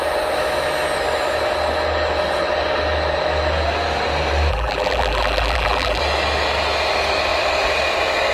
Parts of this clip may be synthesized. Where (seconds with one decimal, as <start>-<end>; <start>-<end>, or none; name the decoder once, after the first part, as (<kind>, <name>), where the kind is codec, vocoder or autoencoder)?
4.5-6.0 (vocoder, BigVGAN v2)